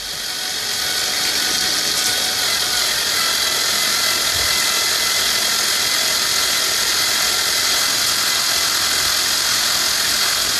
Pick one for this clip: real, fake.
real